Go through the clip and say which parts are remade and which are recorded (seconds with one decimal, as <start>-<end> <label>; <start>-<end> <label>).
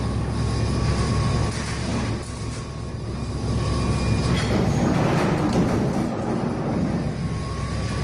0.0-8.0 recorded